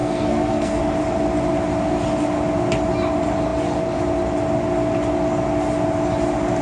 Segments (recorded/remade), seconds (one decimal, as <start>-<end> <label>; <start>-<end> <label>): 0.0-0.8 remade; 0.8-6.6 recorded